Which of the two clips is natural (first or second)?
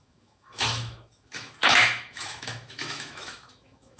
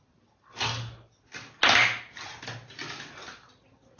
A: second